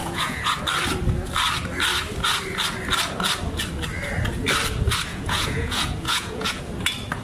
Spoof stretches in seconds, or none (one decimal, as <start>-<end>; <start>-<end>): 0.0-0.6; 5.1-6.6